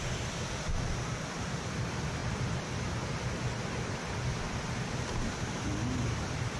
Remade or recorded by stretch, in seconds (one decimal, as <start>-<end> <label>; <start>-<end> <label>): 0.0-6.6 recorded